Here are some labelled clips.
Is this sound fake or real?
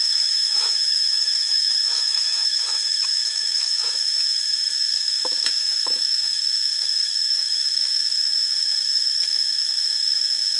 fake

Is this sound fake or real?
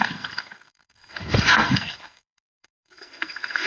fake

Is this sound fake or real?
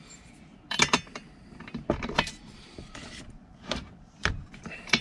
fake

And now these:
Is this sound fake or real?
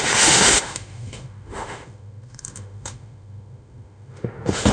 fake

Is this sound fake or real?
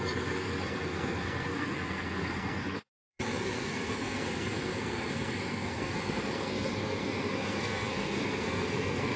fake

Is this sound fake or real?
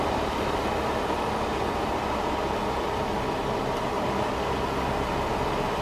real